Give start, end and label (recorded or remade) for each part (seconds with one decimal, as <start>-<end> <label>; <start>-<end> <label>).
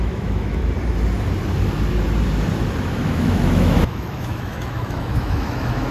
0.0-0.6 remade; 0.6-2.8 recorded; 2.8-5.9 remade